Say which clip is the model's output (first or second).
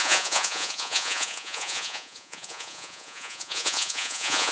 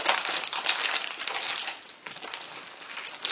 first